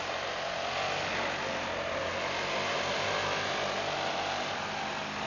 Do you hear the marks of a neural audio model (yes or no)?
no